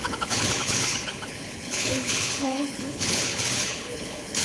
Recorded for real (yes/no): no